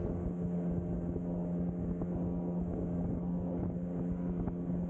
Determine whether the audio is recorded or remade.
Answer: recorded